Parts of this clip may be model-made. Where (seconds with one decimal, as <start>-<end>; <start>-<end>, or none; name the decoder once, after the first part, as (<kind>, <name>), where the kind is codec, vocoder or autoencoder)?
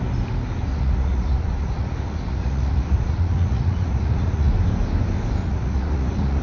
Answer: 0.7-4.5 (vocoder, Vocos); 5.4-6.4